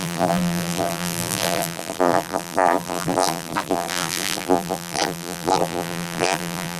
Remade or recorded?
remade